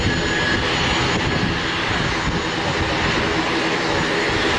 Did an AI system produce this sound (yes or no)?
no